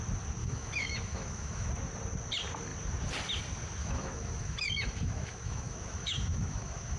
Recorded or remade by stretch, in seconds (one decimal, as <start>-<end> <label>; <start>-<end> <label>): 0.0-0.4 recorded; 0.4-1.7 remade; 1.7-3.8 recorded; 3.8-7.0 remade